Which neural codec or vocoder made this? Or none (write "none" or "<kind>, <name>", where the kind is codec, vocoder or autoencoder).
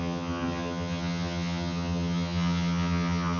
vocoder, HiFi-GAN